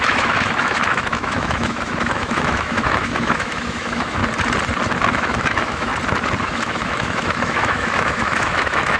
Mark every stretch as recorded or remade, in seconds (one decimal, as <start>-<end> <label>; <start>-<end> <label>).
0.0-4.2 remade; 4.2-5.1 recorded; 5.1-5.9 remade; 5.9-6.4 recorded; 6.4-9.0 remade